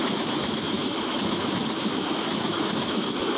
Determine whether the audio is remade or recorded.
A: remade